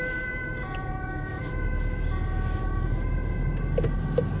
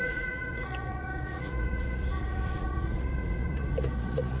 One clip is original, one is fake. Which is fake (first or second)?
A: second